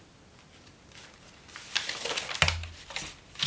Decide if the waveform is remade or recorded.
recorded